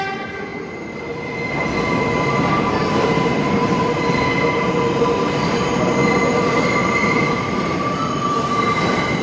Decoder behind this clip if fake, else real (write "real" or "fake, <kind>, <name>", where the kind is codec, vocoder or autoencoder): real